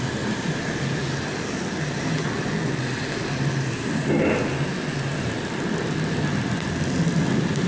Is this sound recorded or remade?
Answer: recorded